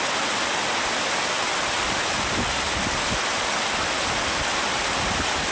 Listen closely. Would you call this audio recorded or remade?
remade